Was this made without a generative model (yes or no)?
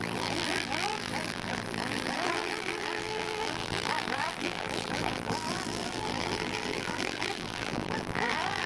no